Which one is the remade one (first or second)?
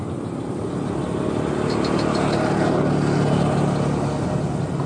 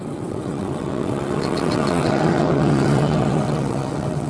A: second